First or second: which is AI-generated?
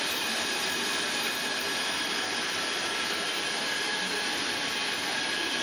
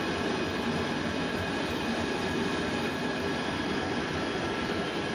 first